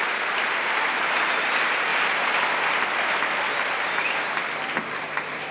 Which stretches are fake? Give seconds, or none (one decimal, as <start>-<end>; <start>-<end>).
none